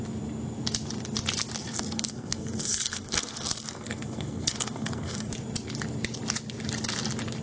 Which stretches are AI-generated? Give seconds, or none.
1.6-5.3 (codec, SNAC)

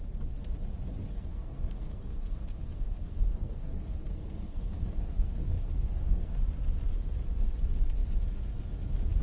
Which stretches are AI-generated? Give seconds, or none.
1.1-6.4 (codec, SNAC)

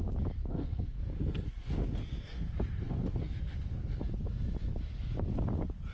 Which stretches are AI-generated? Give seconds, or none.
0.5-4.0 (codec, SNAC)

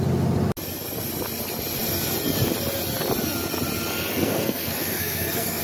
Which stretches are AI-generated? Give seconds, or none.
4.1-5.6 (codec, SNAC)

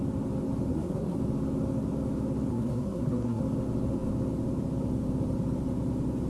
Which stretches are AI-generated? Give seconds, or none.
0.7-1.2 (codec, SNAC); 2.5-3.4

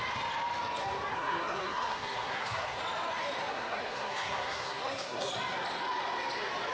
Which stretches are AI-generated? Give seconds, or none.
1.1-2.8 (codec, SNAC); 3.5-5.3

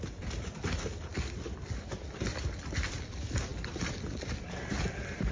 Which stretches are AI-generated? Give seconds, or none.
none

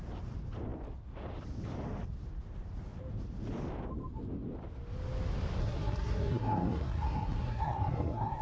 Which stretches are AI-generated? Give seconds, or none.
5.6-8.4 (codec, SNAC)